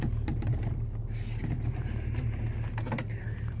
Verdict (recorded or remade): recorded